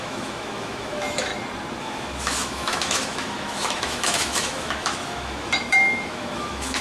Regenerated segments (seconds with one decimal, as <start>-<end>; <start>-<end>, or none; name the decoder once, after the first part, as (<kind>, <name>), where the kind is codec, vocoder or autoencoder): 0.0-1.3 (autoencoder, DAC-VAE); 1.8-6.8